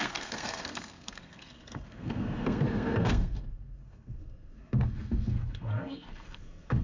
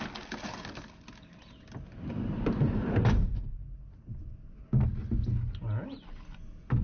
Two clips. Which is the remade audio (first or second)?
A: first